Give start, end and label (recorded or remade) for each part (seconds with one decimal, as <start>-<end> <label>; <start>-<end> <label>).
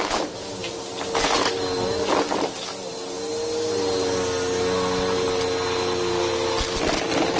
0.0-7.4 recorded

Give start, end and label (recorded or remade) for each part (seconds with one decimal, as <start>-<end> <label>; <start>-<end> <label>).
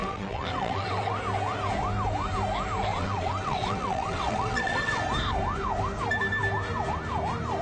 0.0-1.1 remade; 1.1-2.9 recorded; 2.9-5.0 remade; 5.0-7.6 recorded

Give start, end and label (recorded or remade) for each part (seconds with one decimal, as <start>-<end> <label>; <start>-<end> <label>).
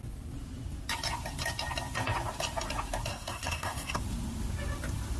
0.0-3.1 recorded; 3.1-4.0 remade; 4.0-5.2 recorded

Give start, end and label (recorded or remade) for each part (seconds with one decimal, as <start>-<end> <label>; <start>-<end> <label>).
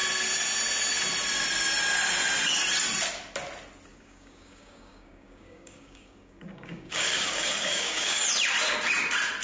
0.0-3.9 recorded; 3.9-8.2 remade; 8.2-9.4 recorded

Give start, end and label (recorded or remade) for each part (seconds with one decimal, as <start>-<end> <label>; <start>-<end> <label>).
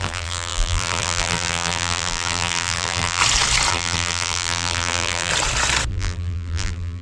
0.0-3.2 remade; 3.2-3.7 recorded; 3.7-5.3 remade; 5.3-5.9 recorded; 5.9-7.0 remade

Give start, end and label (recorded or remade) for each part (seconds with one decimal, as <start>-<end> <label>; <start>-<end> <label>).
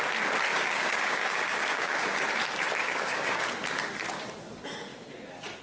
0.0-0.5 recorded; 0.5-2.2 remade; 2.2-2.8 recorded; 2.8-3.4 remade; 3.4-5.6 recorded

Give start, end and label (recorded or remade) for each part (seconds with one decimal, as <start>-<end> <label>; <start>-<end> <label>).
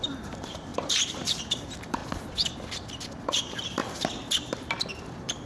0.0-2.0 remade; 2.0-3.2 recorded; 3.2-3.8 remade; 3.8-5.0 recorded; 5.0-5.5 remade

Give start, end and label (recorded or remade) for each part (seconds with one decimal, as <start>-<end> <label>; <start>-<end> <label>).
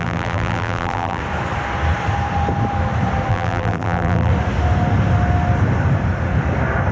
0.0-1.2 remade; 1.2-3.3 recorded; 3.3-4.3 remade; 4.3-6.9 recorded